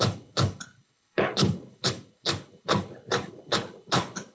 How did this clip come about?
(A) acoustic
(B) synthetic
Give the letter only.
B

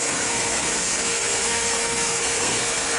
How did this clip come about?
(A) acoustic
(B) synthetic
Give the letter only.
B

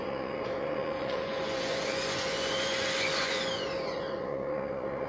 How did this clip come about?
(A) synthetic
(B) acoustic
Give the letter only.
A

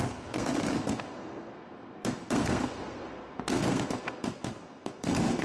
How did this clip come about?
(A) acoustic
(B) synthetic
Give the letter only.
B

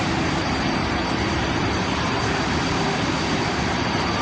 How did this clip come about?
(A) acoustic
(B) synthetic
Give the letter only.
A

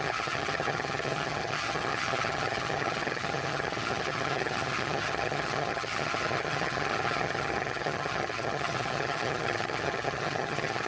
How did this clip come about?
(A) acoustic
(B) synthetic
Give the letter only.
B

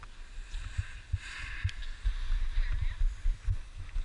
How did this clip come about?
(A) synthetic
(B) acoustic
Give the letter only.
B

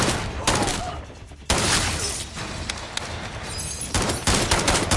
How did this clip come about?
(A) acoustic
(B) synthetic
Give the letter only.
A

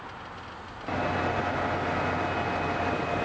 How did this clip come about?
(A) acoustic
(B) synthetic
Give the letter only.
A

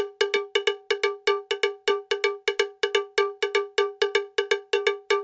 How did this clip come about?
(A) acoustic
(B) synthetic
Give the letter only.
A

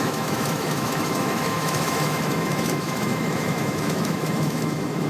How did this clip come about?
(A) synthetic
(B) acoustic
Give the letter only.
A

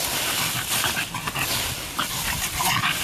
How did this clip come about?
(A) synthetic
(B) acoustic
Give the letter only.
B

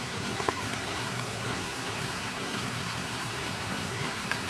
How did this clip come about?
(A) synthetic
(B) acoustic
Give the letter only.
A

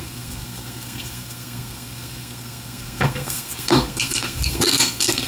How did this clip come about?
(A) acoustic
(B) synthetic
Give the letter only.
B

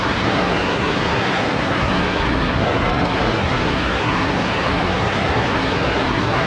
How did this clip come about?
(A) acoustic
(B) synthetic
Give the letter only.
B